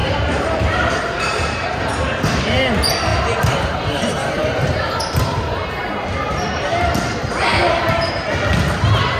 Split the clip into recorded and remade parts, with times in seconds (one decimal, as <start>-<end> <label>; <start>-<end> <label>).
0.0-2.6 remade; 2.6-3.1 recorded; 3.1-5.7 remade; 5.7-9.2 recorded